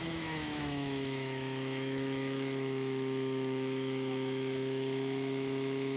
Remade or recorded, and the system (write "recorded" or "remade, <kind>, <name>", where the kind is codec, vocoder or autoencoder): remade, autoencoder, DAC-VAE